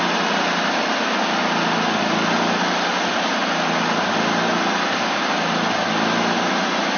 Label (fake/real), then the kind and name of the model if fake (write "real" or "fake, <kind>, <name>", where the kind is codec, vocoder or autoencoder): real